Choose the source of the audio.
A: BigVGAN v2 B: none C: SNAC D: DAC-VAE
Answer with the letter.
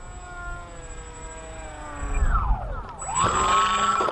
B